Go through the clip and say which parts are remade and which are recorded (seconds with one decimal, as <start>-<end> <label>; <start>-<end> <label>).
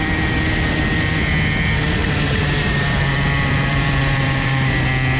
0.0-2.0 recorded; 2.0-4.7 remade; 4.7-5.2 recorded